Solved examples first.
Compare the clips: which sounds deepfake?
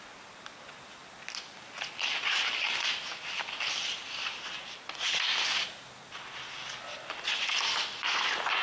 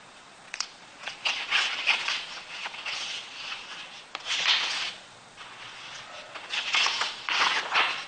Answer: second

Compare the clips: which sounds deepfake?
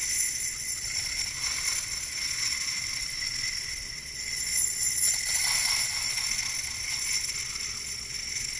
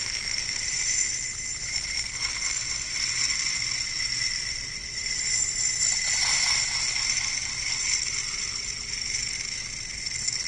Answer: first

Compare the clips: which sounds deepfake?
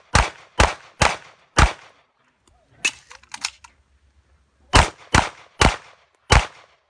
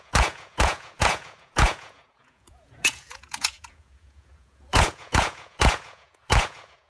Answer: second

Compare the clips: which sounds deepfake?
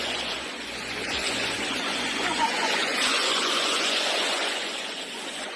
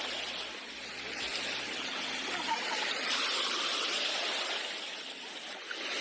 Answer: first